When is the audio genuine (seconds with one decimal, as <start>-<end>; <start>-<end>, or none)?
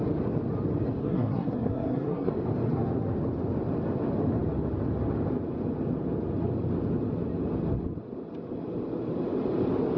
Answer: 0.0-1.0; 2.3-10.0